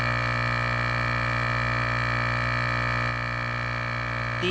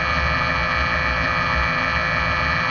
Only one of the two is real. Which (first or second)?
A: first